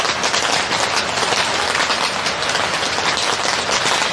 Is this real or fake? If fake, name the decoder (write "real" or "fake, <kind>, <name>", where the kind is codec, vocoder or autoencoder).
real